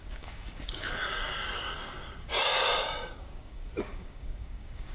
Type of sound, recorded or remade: remade